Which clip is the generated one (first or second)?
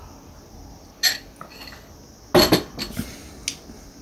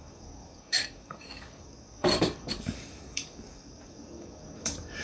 second